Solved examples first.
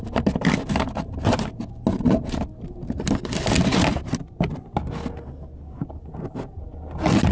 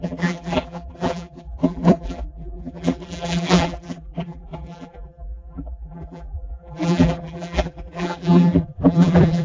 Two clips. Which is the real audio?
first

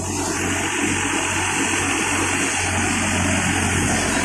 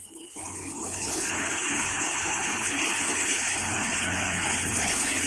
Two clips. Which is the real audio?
first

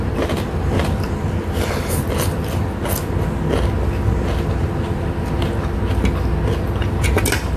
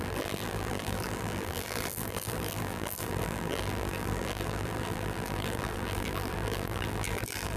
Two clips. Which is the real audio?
first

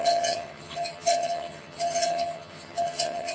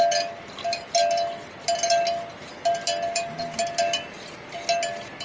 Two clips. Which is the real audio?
second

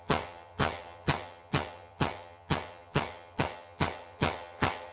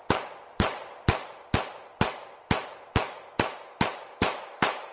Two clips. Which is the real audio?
second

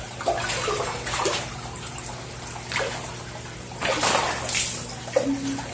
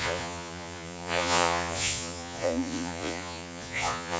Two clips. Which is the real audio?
first